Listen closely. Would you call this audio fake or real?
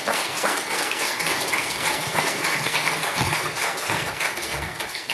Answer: fake